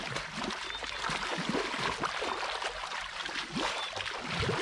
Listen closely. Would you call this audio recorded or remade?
recorded